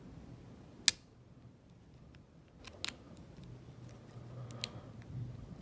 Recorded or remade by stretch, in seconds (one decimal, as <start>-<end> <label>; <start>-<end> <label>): 0.0-5.6 recorded